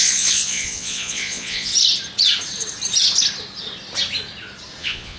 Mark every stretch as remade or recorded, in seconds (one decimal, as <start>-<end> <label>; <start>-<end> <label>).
0.0-1.7 remade; 1.7-4.8 recorded; 4.8-5.2 remade